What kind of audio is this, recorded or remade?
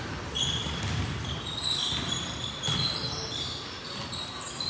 recorded